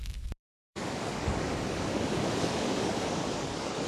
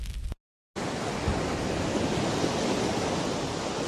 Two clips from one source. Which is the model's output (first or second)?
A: first